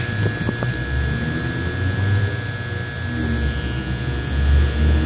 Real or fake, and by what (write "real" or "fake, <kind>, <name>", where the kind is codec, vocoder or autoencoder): real